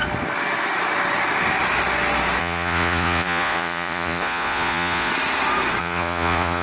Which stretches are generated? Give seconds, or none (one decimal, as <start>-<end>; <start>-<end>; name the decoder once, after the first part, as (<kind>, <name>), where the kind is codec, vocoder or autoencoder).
2.4-5.1 (vocoder, Vocos); 5.8-6.6